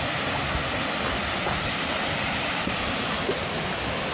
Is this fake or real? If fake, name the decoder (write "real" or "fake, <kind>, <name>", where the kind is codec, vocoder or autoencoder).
real